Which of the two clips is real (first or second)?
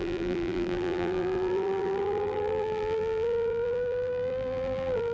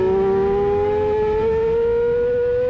second